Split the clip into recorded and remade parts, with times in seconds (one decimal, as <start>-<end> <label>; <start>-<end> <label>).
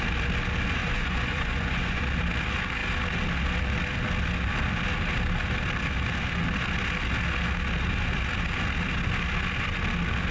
0.0-0.8 recorded; 0.8-2.0 remade; 2.0-10.3 recorded